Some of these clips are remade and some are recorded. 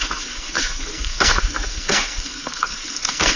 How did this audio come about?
remade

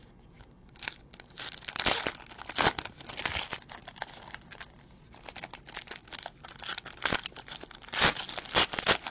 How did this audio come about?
recorded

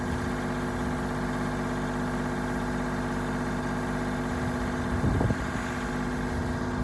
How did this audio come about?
recorded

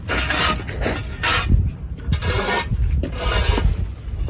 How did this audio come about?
recorded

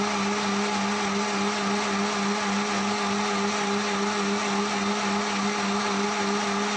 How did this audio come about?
recorded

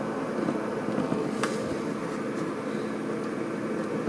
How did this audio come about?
recorded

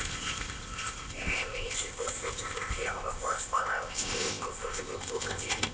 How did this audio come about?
remade